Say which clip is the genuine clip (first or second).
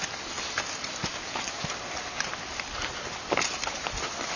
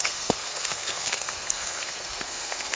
first